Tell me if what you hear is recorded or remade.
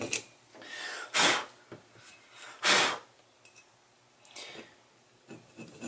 recorded